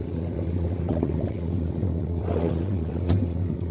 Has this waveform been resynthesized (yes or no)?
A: yes